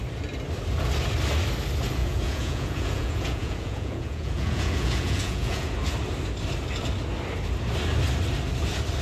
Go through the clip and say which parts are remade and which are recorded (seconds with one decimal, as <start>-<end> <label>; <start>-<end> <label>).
0.0-2.0 recorded; 2.0-5.7 remade; 5.7-9.0 recorded